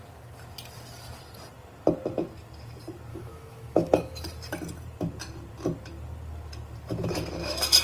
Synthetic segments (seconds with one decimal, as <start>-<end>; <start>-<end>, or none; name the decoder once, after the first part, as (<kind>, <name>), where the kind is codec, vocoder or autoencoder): 3.1-4.2 (autoencoder, DAC-VAE)